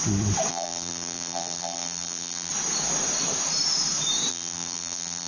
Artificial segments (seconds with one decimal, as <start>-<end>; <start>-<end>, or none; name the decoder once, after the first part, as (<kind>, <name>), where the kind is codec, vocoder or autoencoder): 0.5-2.5 (vocoder, BigVGAN v2); 4.3-5.3

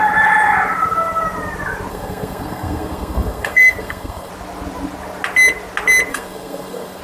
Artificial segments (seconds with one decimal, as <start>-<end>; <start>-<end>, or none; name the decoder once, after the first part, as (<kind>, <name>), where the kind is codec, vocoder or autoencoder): 1.9-4.3 (codec, SNAC); 6.1-7.0

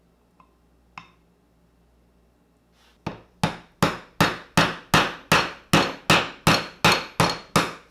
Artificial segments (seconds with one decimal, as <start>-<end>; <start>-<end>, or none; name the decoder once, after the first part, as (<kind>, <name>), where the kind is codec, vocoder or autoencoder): none

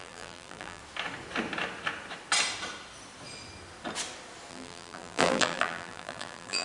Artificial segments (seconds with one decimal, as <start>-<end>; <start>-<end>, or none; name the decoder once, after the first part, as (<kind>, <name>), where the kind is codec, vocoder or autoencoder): 0.0-0.8 (vocoder, BigVGAN v2); 4.5-6.6

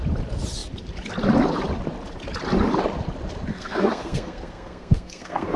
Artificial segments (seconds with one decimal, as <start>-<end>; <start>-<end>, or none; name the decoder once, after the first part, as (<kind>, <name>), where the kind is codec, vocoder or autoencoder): 3.5-5.6 (codec, SNAC)

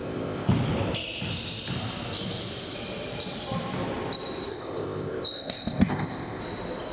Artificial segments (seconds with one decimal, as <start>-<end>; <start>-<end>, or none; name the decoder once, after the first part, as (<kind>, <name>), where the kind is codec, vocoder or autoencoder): 0.0-0.5 (codec, ZipCodec); 4.5-6.4

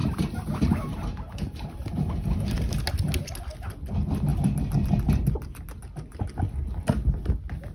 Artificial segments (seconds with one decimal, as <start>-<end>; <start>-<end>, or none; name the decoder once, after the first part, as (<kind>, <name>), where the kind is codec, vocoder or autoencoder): 0.0-2.6 (vocoder, BigVGAN v2)